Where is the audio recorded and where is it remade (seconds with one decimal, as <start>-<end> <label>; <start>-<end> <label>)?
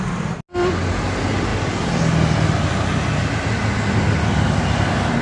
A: 0.0-5.2 recorded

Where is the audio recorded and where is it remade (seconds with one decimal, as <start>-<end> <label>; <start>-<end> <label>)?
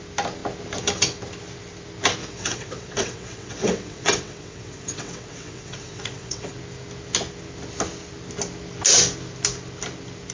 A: 0.0-2.2 recorded; 2.2-6.5 remade; 6.5-10.3 recorded